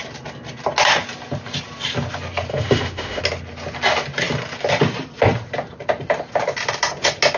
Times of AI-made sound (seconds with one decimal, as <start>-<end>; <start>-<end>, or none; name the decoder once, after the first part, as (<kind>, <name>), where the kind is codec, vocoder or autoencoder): 2.5-3.2 (autoencoder, DAC-VAE)